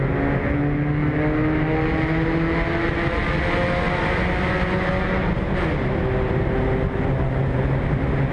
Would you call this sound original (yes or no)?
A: yes